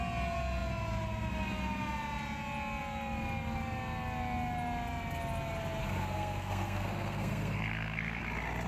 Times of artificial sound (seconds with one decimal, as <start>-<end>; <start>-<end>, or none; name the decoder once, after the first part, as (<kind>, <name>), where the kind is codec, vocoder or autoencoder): 5.8-8.2 (codec, SNAC)